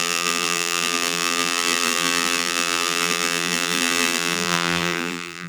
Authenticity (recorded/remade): remade